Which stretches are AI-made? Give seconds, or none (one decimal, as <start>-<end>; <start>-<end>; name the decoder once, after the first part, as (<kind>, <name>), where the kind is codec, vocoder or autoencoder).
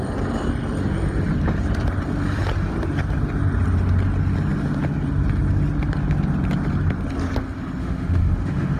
7.8-8.8 (autoencoder, DAC-VAE)